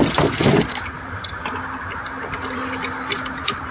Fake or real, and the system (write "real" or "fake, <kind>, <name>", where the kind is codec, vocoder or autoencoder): fake, vocoder, BigVGAN v2